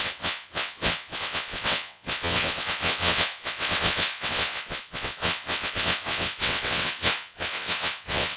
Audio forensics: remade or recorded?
remade